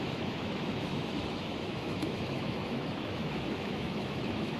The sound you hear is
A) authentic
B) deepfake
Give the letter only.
B